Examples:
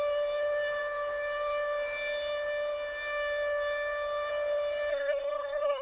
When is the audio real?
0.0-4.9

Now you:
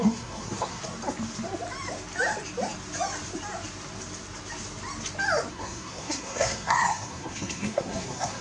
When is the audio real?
0.8-5.5

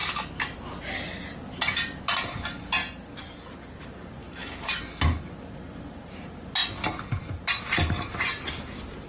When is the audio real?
0.0-4.2; 4.8-9.1

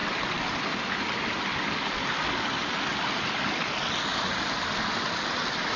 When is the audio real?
0.0-5.8